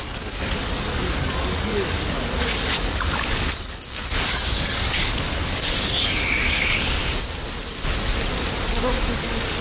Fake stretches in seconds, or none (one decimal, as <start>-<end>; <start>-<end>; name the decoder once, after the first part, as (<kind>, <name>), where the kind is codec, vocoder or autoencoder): 0.0-7.0 (codec, DAC); 9.2-9.6